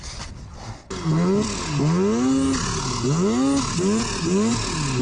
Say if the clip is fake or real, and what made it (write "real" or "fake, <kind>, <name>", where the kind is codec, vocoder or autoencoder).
real